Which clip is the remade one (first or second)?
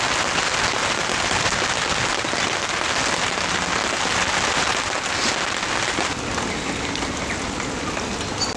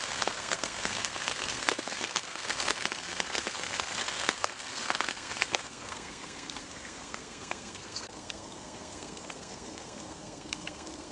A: second